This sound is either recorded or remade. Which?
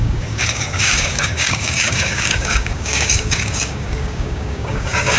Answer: remade